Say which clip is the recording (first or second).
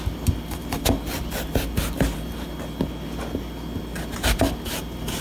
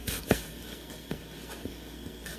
first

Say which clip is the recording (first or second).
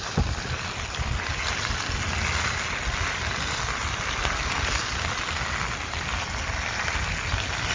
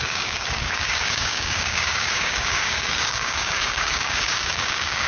first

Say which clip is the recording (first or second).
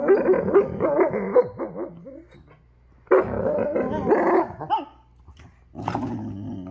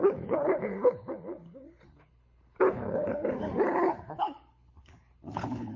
first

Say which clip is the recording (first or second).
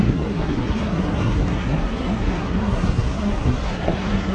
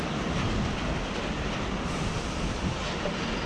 second